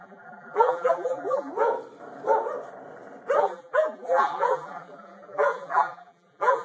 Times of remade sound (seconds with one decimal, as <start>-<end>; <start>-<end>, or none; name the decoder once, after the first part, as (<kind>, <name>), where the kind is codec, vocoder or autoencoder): 0.0-1.5 (vocoder, BigVGAN v2); 3.4-6.6